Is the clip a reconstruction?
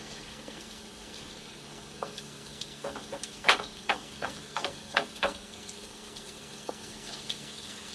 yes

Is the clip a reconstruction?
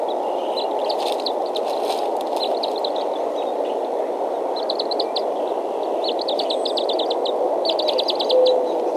no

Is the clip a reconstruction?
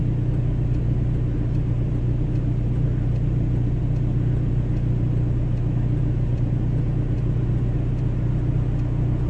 no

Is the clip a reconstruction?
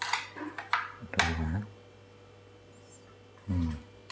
no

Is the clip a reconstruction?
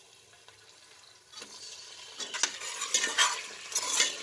no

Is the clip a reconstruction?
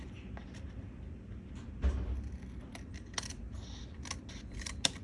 no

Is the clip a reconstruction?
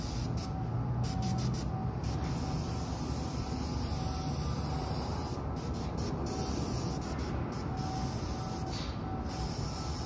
no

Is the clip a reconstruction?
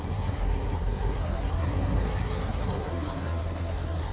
yes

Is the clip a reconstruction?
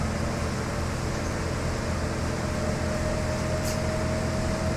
no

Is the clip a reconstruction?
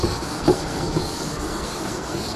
yes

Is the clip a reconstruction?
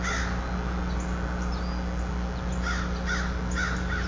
no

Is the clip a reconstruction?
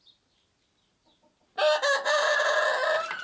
no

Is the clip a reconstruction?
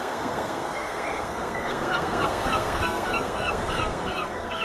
yes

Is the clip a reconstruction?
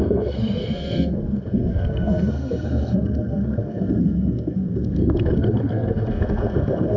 yes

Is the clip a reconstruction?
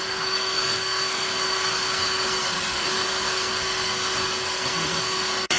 yes